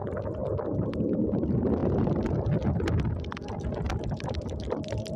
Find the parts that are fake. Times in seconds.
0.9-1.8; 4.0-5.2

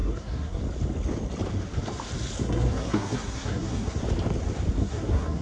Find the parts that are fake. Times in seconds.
0.0-0.6; 2.4-4.0; 4.8-5.4

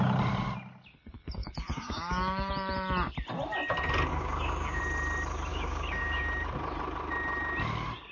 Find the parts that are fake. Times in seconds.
1.4-2.5; 4.1-4.8; 5.5-6.2

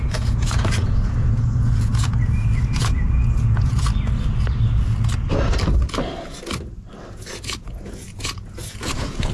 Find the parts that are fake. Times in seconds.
0.0-3.9; 7.1-9.3

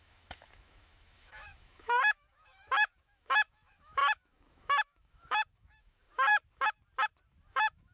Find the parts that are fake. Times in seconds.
0.0-6.3; 7.5-7.9

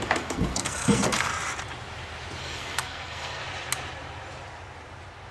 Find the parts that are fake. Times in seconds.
0.0-1.3; 2.4-3.4

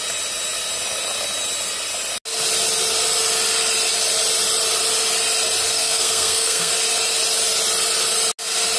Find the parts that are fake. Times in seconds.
5.7-6.7